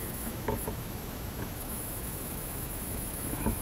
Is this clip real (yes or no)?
no